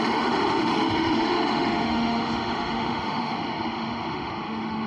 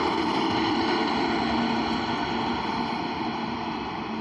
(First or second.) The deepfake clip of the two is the first